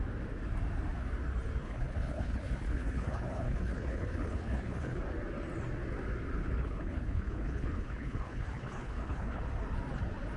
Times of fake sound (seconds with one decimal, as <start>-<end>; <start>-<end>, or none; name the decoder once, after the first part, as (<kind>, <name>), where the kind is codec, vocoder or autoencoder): 1.6-5.0 (codec, HILCodec); 6.4-9.4